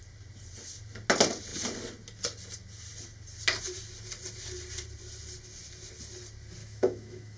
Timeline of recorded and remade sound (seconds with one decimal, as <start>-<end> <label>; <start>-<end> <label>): 0.0-6.6 recorded; 6.6-7.4 remade